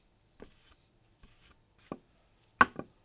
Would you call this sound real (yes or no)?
yes